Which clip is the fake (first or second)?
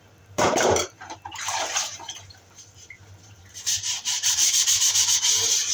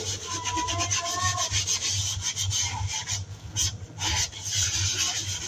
first